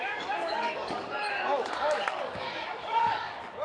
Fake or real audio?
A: fake